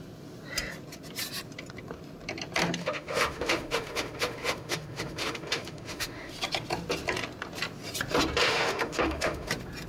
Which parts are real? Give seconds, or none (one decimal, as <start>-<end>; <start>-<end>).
0.0-2.8; 6.3-8.4; 9.5-9.9